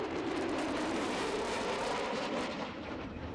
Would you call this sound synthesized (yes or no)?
yes